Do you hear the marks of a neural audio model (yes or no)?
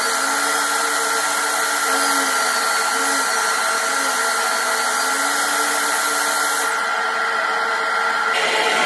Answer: no